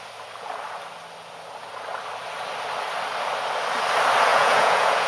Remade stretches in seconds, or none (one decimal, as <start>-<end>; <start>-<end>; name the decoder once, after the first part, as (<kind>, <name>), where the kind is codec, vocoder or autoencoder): 4.3-5.1 (vocoder, Vocos)